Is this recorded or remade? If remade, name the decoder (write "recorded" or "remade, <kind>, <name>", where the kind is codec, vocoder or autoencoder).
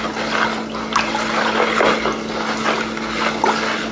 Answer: recorded